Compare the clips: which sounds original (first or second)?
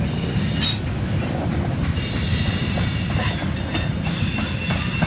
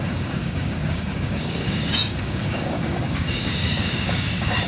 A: first